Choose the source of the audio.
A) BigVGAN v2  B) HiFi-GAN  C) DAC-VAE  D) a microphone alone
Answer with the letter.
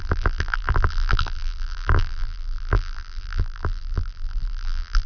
A